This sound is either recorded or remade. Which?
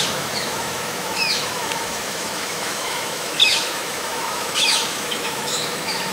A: remade